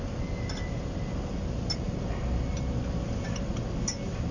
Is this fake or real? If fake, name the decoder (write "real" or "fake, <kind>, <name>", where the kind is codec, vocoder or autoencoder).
real